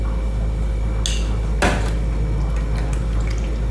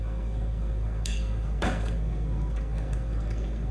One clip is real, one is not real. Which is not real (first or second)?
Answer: second